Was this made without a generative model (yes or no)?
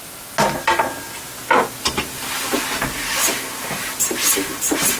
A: yes